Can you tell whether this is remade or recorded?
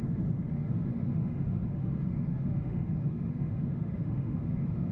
remade